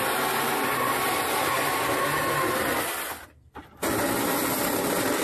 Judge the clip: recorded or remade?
recorded